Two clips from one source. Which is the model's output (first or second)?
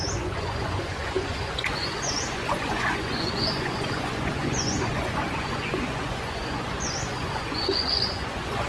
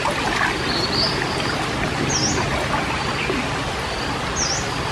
first